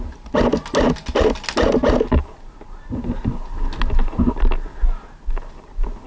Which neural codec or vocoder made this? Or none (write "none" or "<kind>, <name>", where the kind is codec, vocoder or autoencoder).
none